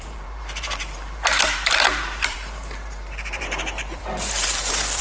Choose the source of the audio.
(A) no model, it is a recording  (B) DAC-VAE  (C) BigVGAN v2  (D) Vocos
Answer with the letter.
C